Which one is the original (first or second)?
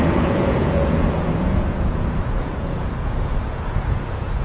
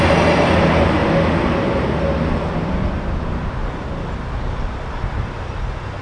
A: second